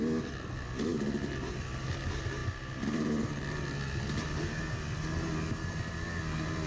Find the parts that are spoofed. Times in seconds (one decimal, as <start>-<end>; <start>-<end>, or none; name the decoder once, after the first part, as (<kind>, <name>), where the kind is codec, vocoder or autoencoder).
none